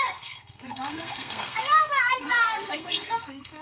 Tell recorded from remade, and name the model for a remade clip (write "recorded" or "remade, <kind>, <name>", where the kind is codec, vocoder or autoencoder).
remade, codec, SNAC